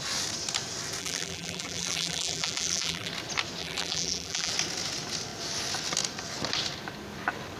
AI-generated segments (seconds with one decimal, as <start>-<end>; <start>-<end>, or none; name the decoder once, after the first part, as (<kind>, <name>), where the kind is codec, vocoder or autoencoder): 1.0-3.1 (vocoder, BigVGAN v2); 3.6-4.5